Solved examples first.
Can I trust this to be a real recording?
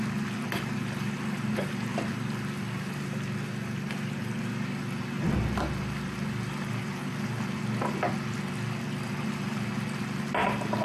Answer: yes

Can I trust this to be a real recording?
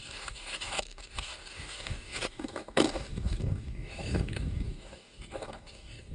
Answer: no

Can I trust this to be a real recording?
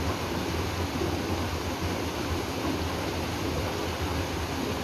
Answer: yes